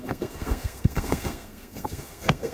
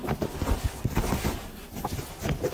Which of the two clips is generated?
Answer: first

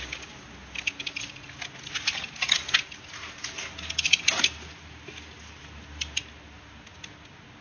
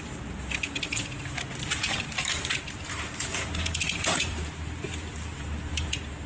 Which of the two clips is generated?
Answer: second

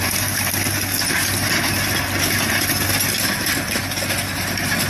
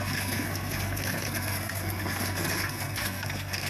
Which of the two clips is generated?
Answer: second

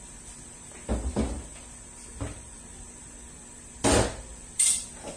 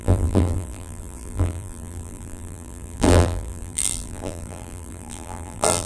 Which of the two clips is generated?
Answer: second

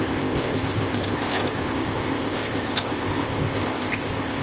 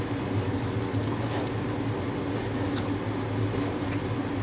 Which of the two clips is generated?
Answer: first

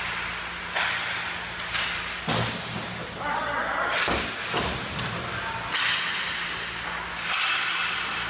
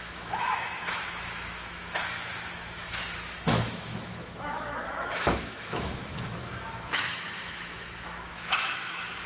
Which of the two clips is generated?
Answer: second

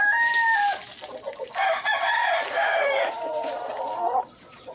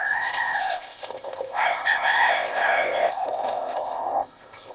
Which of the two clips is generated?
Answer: second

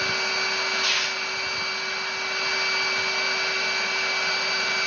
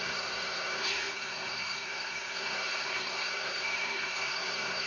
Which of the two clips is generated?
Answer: second